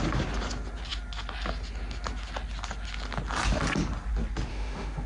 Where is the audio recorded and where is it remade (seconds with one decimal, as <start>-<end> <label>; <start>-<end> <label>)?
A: 0.0-4.5 recorded; 4.5-5.1 remade